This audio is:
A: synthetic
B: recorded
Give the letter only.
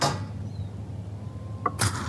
B